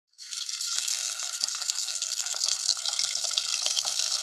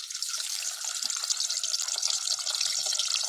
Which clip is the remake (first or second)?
first